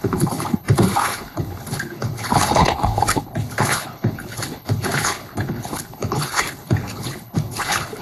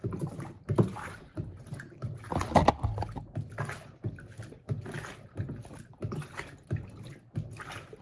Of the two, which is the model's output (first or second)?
first